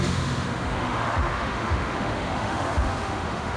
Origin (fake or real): fake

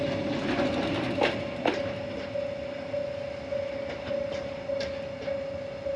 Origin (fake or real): real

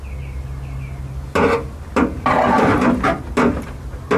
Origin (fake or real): real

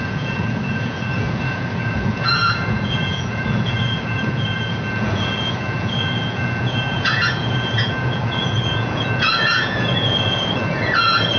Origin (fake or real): fake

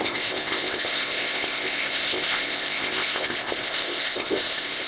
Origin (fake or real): fake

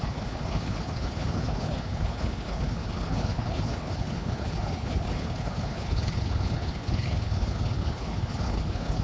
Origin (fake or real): fake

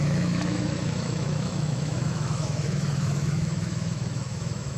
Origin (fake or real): fake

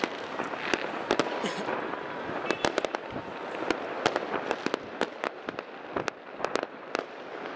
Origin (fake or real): real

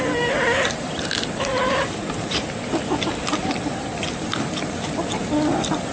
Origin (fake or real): fake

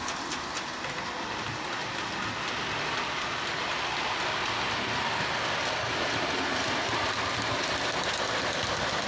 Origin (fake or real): real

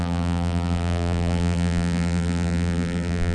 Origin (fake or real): fake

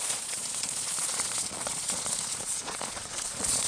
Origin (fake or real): fake